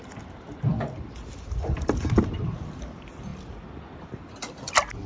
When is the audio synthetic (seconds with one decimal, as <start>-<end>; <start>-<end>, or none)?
none